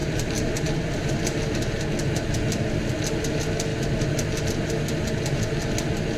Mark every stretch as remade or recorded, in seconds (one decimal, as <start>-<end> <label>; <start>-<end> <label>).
0.0-1.1 remade; 1.1-6.2 recorded